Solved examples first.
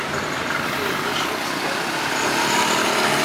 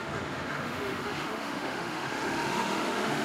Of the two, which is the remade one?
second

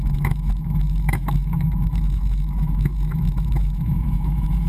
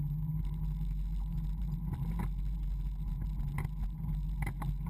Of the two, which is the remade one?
first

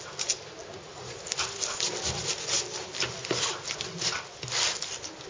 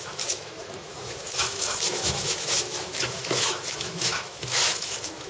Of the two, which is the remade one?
second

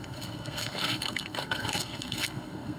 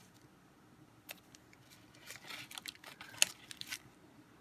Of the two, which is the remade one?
first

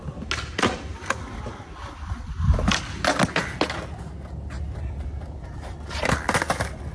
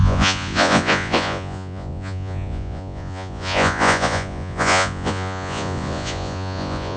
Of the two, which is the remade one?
second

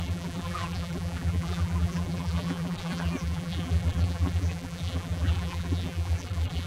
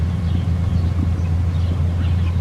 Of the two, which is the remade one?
first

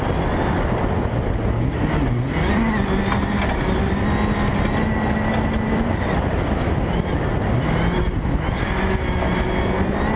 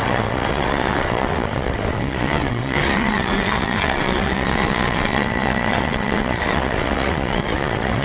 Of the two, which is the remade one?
second